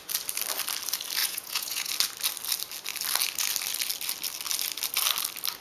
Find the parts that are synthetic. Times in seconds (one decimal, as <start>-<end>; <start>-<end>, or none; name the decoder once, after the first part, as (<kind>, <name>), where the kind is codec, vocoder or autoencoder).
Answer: 1.2-1.9 (vocoder, Vocos)